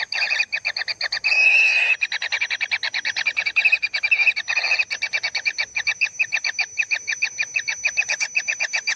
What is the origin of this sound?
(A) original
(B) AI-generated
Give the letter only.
A